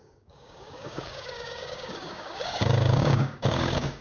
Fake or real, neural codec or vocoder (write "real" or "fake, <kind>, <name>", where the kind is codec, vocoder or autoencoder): fake, codec, DAC